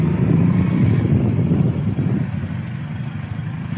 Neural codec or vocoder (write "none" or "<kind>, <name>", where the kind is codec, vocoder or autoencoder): none